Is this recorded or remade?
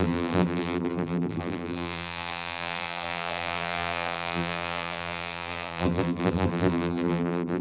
remade